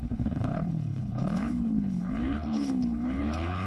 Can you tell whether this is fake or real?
fake